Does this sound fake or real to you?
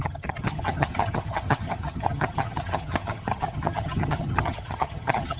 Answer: fake